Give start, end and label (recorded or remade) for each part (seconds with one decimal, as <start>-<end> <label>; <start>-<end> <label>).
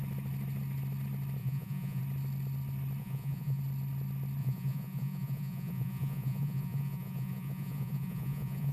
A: 0.0-1.4 recorded; 1.4-2.0 remade; 2.0-3.0 recorded; 3.0-3.6 remade; 3.6-4.4 recorded; 4.4-8.7 remade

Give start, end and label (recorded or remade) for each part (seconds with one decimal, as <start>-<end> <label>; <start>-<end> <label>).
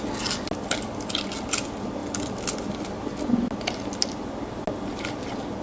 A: 0.0-5.6 recorded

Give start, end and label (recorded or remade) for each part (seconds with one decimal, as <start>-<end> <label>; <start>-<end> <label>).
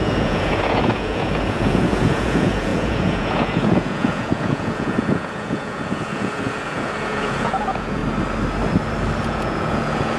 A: 0.0-8.0 remade; 8.0-9.2 recorded; 9.2-10.2 remade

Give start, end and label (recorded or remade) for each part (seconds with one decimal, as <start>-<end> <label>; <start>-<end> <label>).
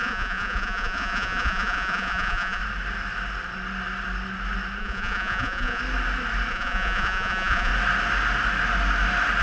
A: 0.0-2.6 remade; 2.6-4.8 recorded; 4.8-5.8 remade; 5.8-6.5 recorded; 6.5-7.7 remade; 7.7-9.4 recorded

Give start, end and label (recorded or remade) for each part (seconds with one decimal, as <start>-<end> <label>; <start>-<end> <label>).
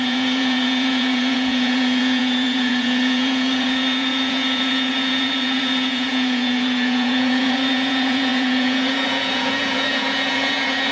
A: 0.0-10.9 remade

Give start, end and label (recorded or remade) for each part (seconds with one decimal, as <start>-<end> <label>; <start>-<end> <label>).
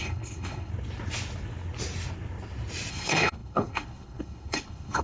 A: 0.0-0.7 remade; 0.7-2.9 recorded; 2.9-5.0 remade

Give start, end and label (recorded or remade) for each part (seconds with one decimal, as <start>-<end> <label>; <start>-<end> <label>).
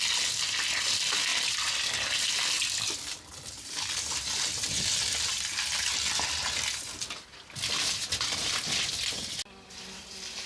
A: 0.0-1.3 recorded; 1.3-5.9 remade; 5.9-10.5 recorded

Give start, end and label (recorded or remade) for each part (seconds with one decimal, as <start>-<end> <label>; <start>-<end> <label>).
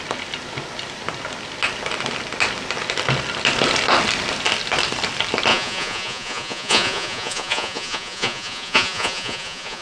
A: 0.0-5.5 recorded; 5.5-9.8 remade